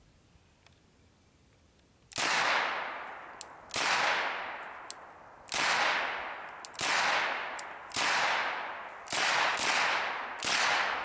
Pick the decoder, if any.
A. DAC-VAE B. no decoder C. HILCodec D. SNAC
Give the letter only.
B